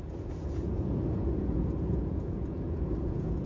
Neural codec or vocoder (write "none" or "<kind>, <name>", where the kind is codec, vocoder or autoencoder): vocoder, Vocos